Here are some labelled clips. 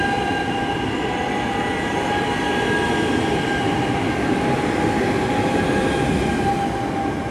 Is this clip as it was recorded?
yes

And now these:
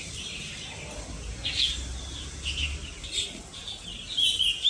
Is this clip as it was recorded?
yes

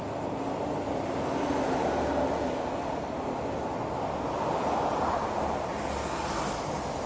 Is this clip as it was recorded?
yes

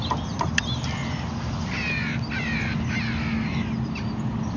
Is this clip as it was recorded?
yes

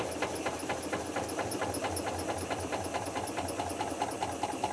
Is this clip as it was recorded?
yes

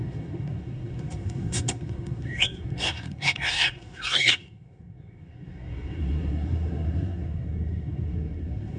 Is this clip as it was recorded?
no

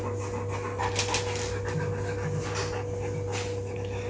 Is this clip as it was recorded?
yes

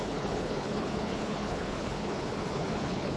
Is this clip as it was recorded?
no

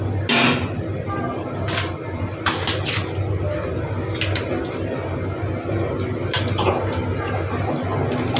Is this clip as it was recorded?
yes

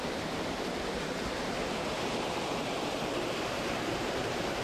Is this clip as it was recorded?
no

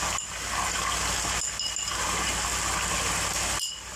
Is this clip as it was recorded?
yes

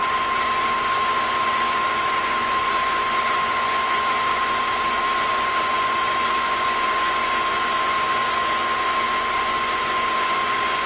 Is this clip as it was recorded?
no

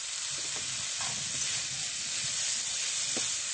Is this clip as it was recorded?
yes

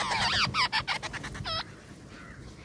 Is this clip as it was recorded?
yes